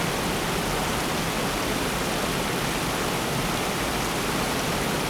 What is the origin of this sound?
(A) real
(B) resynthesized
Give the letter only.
A